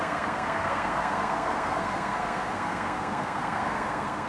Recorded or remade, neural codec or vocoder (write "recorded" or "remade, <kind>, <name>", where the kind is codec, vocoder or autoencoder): remade, codec, SNAC